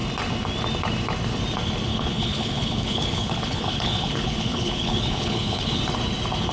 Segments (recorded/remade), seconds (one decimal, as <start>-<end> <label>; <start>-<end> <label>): 0.0-1.9 recorded; 1.9-5.8 remade; 5.8-6.5 recorded